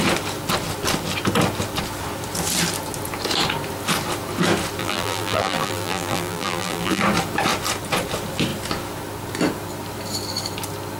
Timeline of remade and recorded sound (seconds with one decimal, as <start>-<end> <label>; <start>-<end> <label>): 0.0-4.8 recorded; 4.8-7.0 remade; 7.0-11.0 recorded